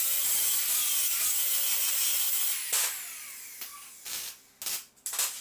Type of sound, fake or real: real